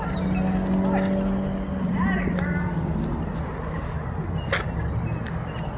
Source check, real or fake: real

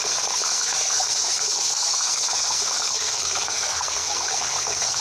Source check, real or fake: fake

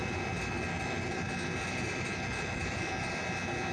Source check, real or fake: real